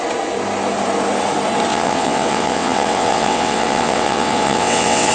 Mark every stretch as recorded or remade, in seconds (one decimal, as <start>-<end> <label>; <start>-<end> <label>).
0.0-1.7 recorded; 1.7-5.1 remade